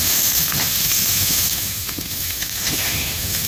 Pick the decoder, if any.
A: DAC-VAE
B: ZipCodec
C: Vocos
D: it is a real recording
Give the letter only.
A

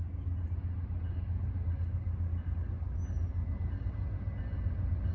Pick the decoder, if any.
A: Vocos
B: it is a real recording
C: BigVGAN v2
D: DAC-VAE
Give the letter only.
B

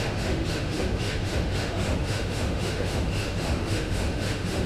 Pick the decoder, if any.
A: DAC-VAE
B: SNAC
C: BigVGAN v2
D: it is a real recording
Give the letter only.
A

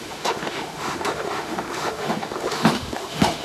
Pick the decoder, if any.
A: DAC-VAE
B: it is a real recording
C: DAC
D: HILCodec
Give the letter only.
A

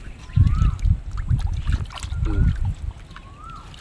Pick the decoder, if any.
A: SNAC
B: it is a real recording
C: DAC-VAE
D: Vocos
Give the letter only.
B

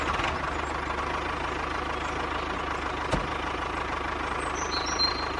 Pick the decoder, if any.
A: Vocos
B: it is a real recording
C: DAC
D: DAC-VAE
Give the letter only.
B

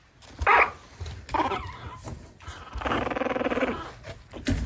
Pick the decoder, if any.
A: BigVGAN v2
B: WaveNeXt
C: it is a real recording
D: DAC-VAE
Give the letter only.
C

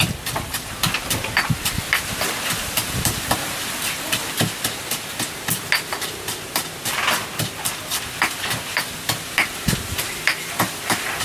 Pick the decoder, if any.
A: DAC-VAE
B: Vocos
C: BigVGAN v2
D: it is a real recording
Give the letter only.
D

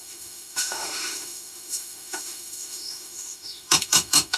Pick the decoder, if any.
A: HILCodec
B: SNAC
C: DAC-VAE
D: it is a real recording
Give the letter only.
C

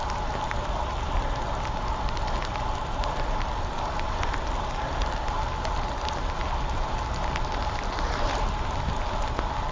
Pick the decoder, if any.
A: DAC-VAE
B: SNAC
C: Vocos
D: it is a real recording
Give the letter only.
D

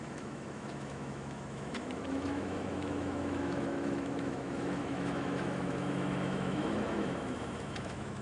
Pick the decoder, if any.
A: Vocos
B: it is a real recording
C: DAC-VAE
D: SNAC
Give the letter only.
C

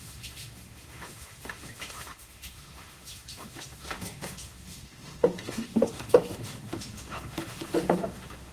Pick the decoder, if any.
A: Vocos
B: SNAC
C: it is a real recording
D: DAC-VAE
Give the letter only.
D